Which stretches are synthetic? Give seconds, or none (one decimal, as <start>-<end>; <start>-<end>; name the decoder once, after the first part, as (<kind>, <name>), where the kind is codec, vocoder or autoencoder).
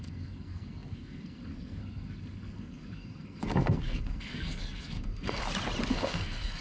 0.0-5.4 (codec, SNAC); 5.9-6.6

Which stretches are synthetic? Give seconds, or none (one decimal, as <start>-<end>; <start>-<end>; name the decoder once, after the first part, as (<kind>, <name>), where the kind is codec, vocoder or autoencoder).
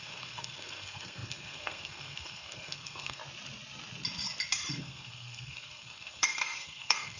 0.0-3.2 (codec, SNAC); 4.8-7.2